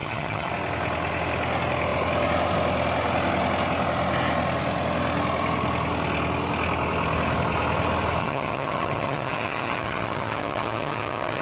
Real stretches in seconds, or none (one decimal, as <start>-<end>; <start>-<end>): 0.5-8.2

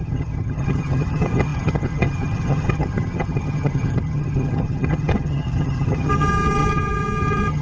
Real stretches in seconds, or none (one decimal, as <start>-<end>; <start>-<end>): none

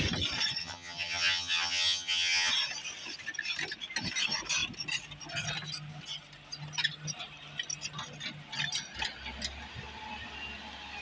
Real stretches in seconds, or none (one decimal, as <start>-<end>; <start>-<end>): 0.0-0.6; 2.5-11.0

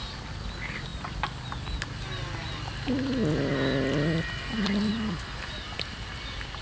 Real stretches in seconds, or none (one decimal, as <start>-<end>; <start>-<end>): 0.0-6.6

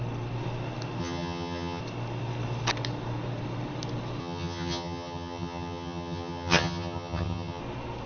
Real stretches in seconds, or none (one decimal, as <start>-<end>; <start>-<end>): 0.0-1.0; 1.8-4.2; 7.6-8.1

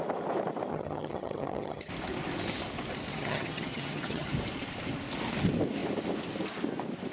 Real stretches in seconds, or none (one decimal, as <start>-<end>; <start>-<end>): 0.0-0.7; 1.9-3.1; 4.3-7.1